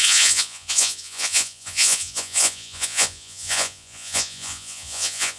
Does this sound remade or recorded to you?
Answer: remade